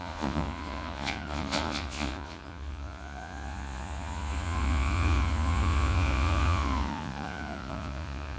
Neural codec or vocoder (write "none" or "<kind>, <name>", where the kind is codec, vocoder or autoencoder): vocoder, Vocos